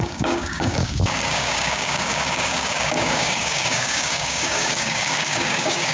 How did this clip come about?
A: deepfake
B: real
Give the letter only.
A